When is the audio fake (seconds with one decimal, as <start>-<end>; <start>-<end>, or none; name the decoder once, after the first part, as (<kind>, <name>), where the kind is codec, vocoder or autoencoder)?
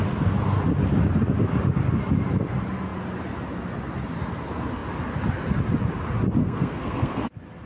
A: 6.4-7.3 (codec, SNAC)